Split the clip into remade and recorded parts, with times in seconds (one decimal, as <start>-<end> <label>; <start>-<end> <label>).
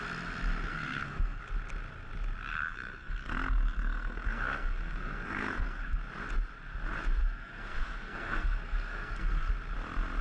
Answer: 0.0-0.7 recorded; 0.7-1.4 remade; 1.4-2.5 recorded; 2.5-6.0 remade; 6.0-7.2 recorded; 7.2-9.5 remade; 9.5-10.2 recorded